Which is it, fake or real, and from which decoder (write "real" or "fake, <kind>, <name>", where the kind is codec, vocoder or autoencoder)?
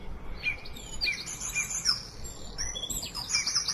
real